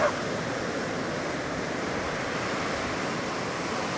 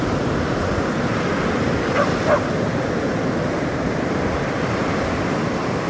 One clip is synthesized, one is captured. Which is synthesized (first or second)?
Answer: second